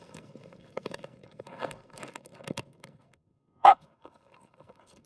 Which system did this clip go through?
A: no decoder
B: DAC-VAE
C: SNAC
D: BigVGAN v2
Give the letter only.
C